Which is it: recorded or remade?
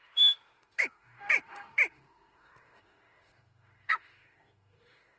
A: remade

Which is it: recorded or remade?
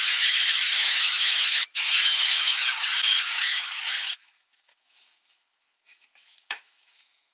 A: remade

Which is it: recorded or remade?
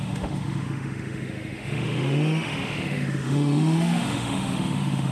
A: remade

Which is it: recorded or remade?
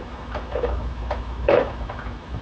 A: remade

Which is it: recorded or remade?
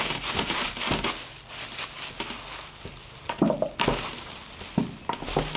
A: recorded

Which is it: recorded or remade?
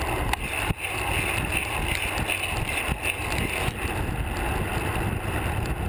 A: recorded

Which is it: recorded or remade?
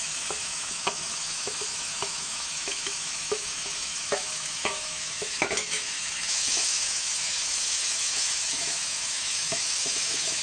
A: remade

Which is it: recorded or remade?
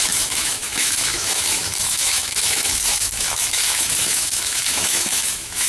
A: remade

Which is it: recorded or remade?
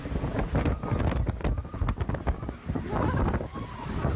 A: recorded